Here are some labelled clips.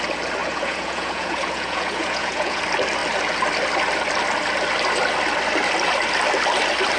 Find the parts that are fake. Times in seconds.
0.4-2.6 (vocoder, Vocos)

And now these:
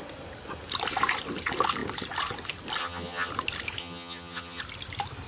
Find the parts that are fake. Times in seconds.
2.8-3.3 (vocoder, HiFi-GAN); 3.8-4.6